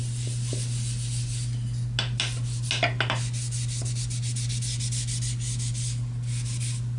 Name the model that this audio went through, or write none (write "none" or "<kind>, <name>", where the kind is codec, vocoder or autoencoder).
none